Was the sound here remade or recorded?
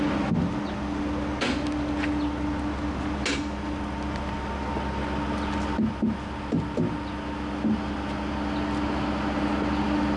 recorded